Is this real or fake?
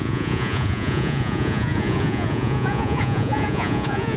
fake